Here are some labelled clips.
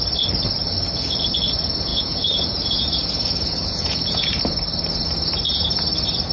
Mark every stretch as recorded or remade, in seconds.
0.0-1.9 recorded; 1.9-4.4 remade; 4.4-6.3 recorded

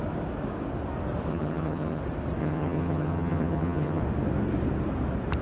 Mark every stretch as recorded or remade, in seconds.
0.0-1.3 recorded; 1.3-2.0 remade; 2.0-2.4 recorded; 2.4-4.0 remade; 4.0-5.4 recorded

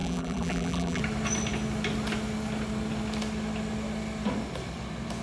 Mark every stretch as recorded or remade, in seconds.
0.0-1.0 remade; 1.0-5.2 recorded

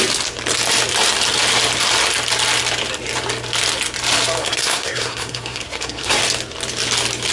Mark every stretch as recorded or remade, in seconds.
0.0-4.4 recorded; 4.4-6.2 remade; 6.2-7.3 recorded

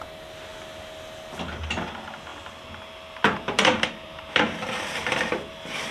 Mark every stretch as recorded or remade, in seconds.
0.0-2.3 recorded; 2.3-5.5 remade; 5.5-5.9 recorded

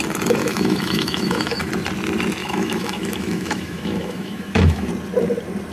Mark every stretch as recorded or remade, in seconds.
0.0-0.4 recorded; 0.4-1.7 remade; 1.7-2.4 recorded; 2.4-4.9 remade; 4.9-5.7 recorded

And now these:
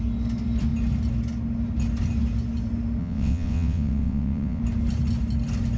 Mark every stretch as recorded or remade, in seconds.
0.0-3.0 recorded; 3.0-4.6 remade; 4.6-5.8 recorded

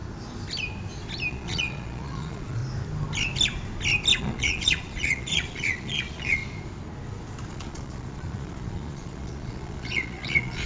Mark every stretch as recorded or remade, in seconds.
0.0-1.3 recorded; 1.3-2.6 remade; 2.6-4.2 recorded; 4.2-6.4 remade; 6.4-7.5 recorded; 7.5-10.7 remade